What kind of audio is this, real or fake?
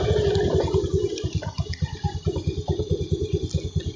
real